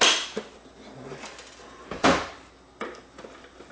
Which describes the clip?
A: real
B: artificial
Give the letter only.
A